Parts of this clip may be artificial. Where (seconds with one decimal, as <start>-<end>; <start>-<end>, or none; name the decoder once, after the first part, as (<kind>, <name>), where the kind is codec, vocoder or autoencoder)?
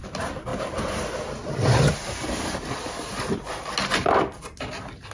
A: 0.5-3.6 (vocoder, BigVGAN v2)